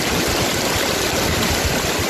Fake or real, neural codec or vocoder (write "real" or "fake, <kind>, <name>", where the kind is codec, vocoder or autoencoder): real